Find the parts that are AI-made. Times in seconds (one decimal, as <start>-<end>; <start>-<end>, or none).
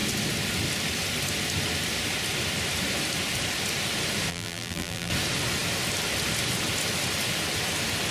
4.3-5.1